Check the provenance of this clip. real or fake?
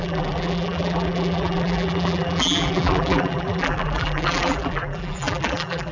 fake